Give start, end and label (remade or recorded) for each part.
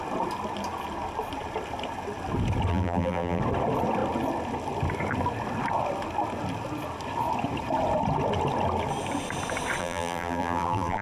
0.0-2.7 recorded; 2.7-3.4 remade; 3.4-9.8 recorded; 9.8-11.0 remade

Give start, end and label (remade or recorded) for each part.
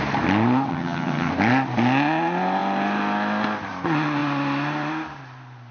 0.0-0.7 recorded; 0.7-1.3 remade; 1.3-5.7 recorded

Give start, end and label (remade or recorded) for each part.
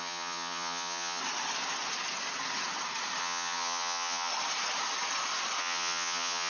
0.0-1.2 remade; 1.2-3.2 recorded; 3.2-4.3 remade; 4.3-5.6 recorded; 5.6-6.5 remade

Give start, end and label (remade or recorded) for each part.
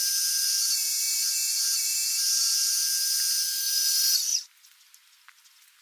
0.0-4.3 recorded; 4.3-4.9 remade; 4.9-5.8 recorded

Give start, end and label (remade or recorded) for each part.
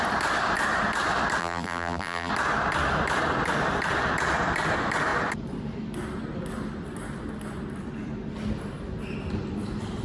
0.0-1.4 recorded; 1.4-2.3 remade; 2.3-10.0 recorded